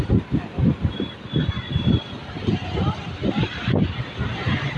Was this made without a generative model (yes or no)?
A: yes